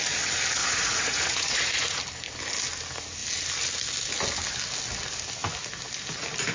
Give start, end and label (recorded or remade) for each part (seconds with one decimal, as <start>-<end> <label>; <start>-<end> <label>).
0.0-0.6 recorded; 0.6-2.0 remade; 2.0-6.5 recorded